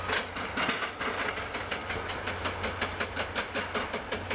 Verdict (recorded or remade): recorded